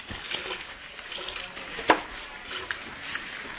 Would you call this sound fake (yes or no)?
no